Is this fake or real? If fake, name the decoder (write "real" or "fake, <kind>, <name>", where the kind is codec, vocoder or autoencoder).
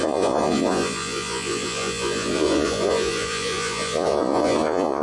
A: fake, vocoder, Vocos